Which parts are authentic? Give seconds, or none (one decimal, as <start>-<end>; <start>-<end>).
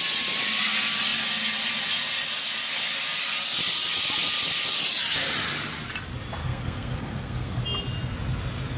0.0-6.4; 7.6-8.8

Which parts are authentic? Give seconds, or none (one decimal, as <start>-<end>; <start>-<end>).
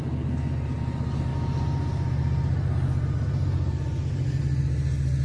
0.0-5.2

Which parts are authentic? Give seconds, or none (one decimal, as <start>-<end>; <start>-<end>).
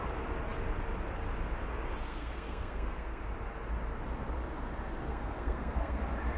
0.0-2.1; 3.2-5.1; 6.0-6.4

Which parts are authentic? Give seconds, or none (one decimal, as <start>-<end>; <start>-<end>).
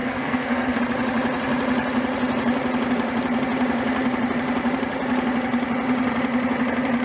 0.8-7.0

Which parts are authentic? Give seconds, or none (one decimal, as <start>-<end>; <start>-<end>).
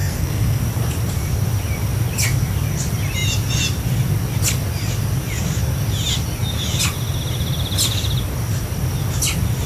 0.6-9.7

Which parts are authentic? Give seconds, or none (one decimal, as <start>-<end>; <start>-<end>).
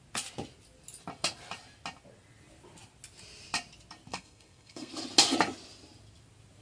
0.0-4.1; 4.9-6.6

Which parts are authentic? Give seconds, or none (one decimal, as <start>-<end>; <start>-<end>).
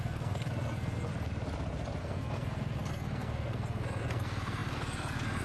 1.1-2.0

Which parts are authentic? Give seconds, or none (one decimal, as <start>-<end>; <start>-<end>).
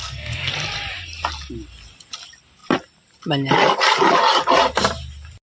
0.5-5.5